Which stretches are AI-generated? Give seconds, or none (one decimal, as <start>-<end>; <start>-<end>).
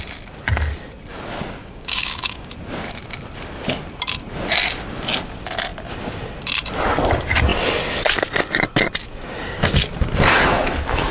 1.6-2.5